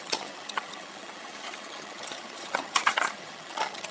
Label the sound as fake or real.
fake